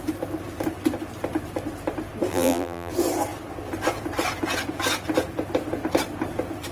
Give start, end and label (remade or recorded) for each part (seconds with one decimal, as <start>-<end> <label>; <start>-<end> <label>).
0.0-2.3 recorded; 2.3-2.9 remade; 2.9-6.7 recorded